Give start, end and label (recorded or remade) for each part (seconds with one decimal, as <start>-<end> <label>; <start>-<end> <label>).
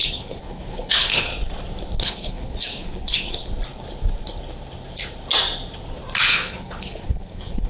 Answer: 0.0-1.3 remade; 1.3-2.0 recorded; 2.0-3.4 remade; 3.4-6.2 recorded; 6.2-7.7 remade